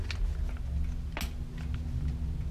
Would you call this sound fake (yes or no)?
no